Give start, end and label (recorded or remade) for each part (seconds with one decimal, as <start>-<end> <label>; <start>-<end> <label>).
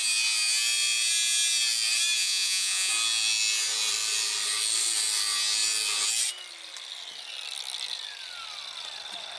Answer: 0.0-2.2 recorded; 2.2-2.9 remade; 2.9-9.4 recorded